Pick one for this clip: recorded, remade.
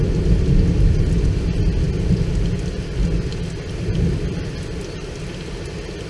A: recorded